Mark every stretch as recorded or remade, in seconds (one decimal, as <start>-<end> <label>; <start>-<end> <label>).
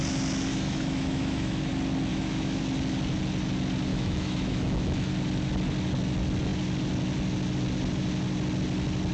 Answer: 0.0-0.5 recorded; 0.5-1.7 remade; 1.7-2.1 recorded; 2.1-2.6 remade; 2.6-3.9 recorded; 3.9-5.1 remade; 5.1-9.1 recorded